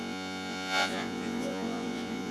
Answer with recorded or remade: remade